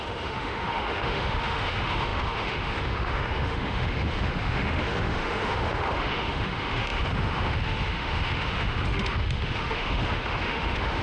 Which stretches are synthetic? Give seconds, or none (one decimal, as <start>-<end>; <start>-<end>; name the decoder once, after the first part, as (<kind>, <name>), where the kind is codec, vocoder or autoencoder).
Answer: 0.0-11.0 (autoencoder, DAC-VAE)